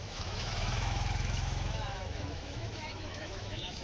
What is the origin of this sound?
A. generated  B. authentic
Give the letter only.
A